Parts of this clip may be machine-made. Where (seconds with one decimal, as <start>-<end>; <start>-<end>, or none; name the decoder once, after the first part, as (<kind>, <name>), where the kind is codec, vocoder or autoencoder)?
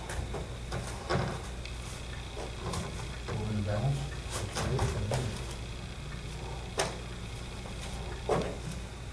none